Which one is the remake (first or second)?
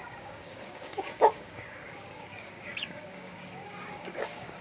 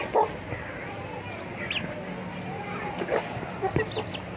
first